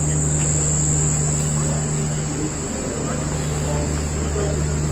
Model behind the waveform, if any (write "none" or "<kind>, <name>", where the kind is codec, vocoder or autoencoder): none